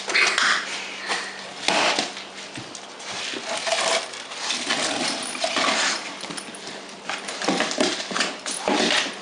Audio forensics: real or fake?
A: real